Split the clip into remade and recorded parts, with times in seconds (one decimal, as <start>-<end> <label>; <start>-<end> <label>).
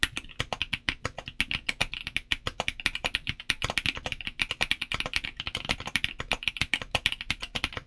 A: 0.0-7.9 recorded